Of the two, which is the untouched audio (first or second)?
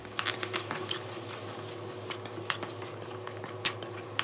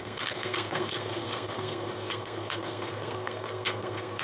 first